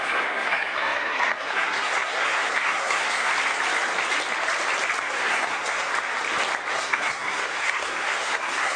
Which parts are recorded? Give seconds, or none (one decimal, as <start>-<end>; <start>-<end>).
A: 3.3-5.0; 5.9-6.7